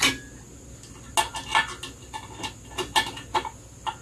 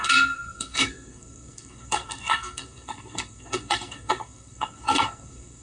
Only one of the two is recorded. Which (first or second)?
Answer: first